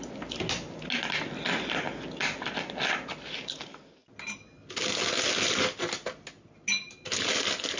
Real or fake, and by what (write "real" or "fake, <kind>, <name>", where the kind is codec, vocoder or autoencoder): real